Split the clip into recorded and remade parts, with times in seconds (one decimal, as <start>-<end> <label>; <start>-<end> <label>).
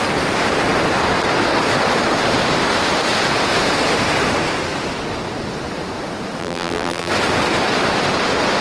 0.0-6.4 recorded; 6.4-7.1 remade; 7.1-8.6 recorded